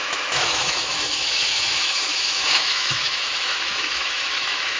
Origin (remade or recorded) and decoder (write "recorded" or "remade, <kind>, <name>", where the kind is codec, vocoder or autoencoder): remade, autoencoder, DAC-VAE